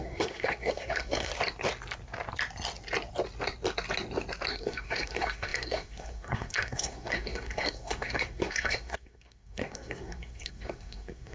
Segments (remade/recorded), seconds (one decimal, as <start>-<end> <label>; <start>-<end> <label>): 0.0-1.3 remade; 1.3-4.5 recorded; 4.5-11.3 remade